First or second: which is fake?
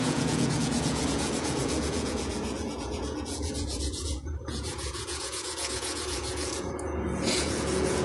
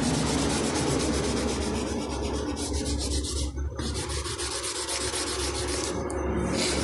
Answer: first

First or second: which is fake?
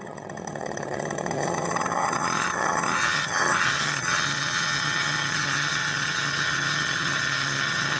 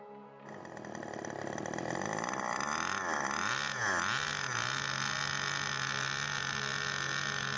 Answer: first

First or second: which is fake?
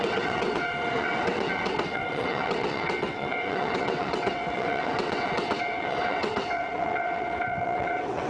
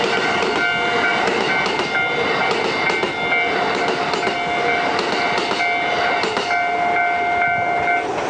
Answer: first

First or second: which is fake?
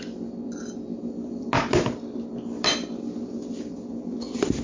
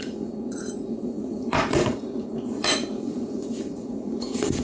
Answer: second